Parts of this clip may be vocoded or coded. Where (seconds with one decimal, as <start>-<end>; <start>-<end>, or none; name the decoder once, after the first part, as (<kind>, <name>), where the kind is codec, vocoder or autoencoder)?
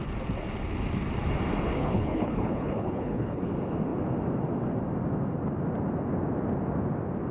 1.8-3.5 (codec, HILCodec)